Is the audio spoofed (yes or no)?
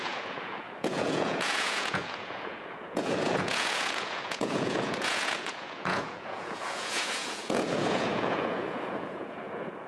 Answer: yes